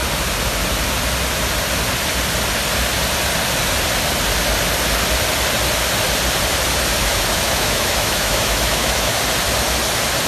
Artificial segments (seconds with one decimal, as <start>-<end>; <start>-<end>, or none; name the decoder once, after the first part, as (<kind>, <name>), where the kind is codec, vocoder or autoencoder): 7.0-9.2 (autoencoder, DAC-VAE)